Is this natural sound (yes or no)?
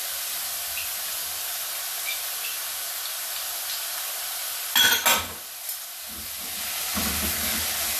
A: yes